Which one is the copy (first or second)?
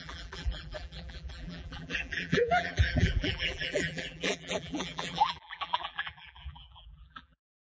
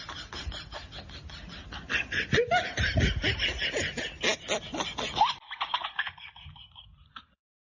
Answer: first